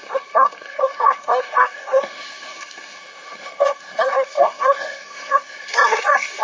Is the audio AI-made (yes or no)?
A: yes